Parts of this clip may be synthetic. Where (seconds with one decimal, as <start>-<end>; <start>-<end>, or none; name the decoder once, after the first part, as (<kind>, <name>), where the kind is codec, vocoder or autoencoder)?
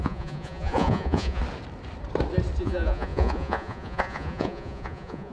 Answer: 0.0-1.4 (vocoder, Vocos); 2.6-5.3